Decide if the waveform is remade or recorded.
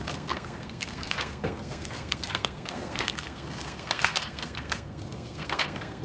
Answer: remade